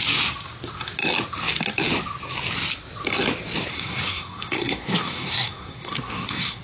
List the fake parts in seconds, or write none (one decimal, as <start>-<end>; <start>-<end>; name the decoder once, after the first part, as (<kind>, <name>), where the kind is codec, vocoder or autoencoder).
3.7-6.6 (codec, SNAC)